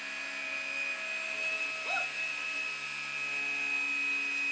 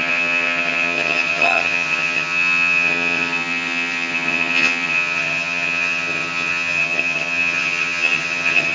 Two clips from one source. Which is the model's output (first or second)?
second